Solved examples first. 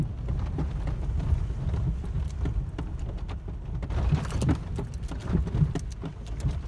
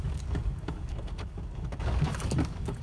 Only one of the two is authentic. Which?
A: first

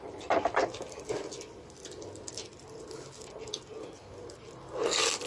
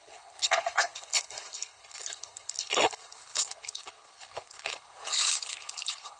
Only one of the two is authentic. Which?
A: first